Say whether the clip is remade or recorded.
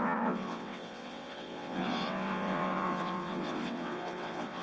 remade